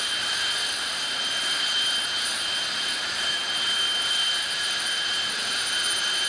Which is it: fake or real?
fake